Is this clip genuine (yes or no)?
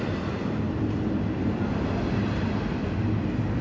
yes